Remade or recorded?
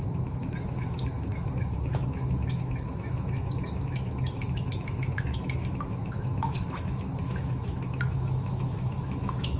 remade